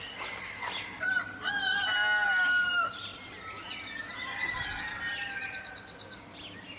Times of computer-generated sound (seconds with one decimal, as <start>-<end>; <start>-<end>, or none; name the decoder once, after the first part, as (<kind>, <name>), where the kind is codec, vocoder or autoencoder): none